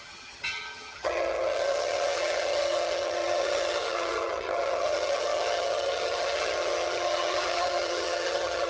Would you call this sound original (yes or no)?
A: no